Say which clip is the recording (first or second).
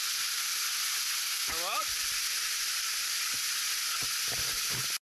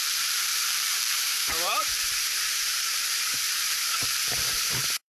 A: first